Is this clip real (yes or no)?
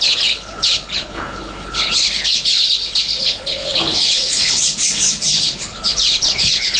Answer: no